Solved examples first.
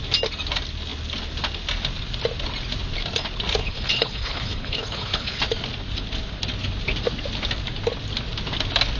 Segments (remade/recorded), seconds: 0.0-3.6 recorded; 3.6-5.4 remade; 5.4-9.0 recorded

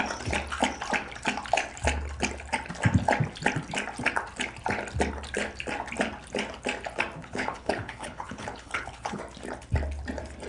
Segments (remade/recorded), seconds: 0.0-7.2 recorded; 7.2-9.2 remade; 9.2-10.5 recorded

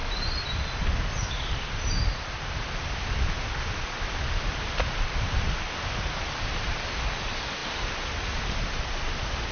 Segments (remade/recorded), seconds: 0.0-2.0 remade; 2.0-9.5 recorded

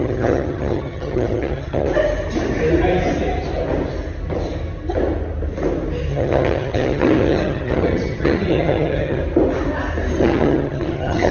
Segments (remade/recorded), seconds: 0.0-1.9 remade; 1.9-6.1 recorded; 6.1-9.2 remade; 9.2-10.2 recorded; 10.2-11.3 remade

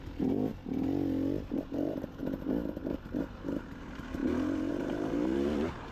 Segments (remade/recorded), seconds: 0.0-0.5 remade; 0.5-1.5 recorded; 1.5-2.2 remade; 2.2-2.8 recorded; 2.8-4.2 remade; 4.2-4.7 recorded; 4.7-5.9 remade